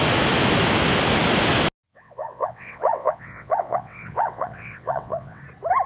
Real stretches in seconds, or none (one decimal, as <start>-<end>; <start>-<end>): 0.0-1.9; 5.4-5.9